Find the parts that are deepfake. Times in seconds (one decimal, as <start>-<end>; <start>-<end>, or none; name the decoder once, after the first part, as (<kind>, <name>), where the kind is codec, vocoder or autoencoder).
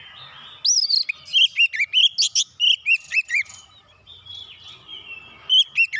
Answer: 2.8-4.3 (vocoder, BigVGAN v2)